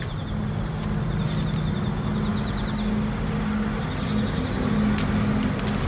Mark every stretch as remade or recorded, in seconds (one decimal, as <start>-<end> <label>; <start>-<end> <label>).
0.0-5.9 recorded